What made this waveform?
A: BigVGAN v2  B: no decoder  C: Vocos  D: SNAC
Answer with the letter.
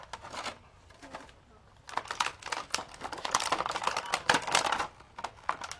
B